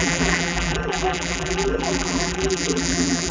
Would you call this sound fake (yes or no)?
yes